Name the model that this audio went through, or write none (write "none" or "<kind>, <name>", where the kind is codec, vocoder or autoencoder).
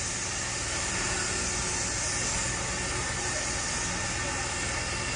none